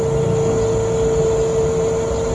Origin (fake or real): real